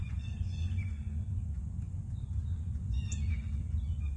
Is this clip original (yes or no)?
no